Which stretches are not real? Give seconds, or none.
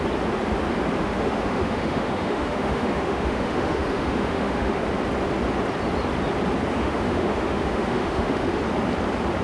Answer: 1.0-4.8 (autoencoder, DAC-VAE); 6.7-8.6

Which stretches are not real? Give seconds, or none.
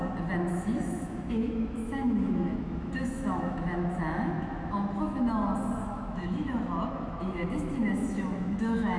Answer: 0.5-5.2 (autoencoder, DAC-VAE); 5.8-9.0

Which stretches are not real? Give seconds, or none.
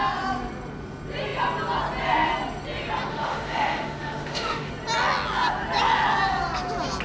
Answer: 3.1-4.7 (autoencoder, DAC-VAE)